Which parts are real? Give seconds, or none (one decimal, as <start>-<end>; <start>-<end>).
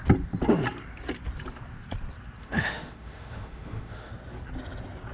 0.0-2.4; 4.1-5.1